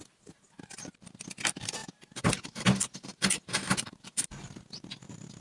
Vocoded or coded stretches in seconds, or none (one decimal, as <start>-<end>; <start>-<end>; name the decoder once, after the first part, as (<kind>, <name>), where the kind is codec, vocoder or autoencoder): none